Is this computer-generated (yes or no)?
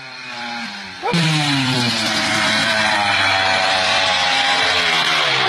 yes